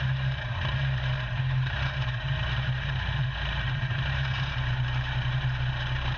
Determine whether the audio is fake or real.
fake